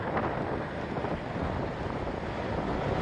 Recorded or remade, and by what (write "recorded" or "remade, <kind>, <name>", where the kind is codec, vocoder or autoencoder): recorded